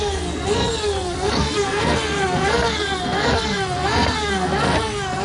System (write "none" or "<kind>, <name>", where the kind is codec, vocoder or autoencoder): codec, SNAC